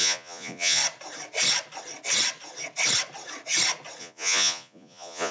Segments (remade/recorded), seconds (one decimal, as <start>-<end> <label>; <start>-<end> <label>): 0.0-0.8 remade; 0.8-4.0 recorded; 4.0-5.3 remade